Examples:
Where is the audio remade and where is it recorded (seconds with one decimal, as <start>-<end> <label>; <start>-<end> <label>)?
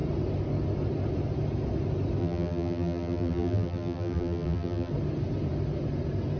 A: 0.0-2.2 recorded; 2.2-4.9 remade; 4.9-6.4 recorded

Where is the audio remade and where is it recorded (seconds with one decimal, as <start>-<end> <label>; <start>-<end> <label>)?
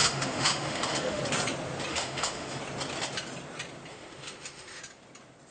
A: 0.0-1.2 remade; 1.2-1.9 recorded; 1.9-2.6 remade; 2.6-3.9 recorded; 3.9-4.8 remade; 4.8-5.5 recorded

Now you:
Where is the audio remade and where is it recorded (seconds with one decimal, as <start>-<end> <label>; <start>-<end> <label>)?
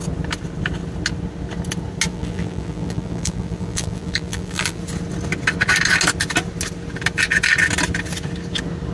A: 0.0-2.1 recorded; 2.1-4.8 remade; 4.8-8.9 recorded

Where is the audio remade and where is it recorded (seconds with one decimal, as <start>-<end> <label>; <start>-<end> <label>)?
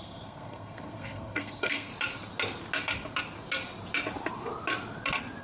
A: 0.0-1.9 remade; 1.9-5.4 recorded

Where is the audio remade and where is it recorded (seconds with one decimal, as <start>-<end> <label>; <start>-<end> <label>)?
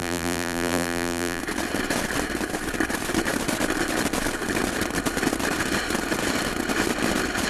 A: 0.0-1.4 remade; 1.4-7.5 recorded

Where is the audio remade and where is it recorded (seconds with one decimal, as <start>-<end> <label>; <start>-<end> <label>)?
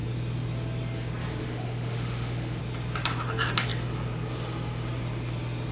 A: 0.0-1.4 recorded; 1.4-2.6 remade; 2.6-5.7 recorded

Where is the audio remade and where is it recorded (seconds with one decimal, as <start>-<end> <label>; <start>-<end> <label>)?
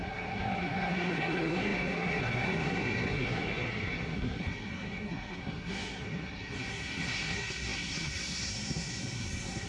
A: 0.0-9.7 remade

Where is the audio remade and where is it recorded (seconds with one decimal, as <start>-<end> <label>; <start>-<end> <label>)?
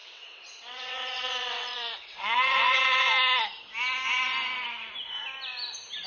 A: 0.0-3.0 remade; 3.0-6.1 recorded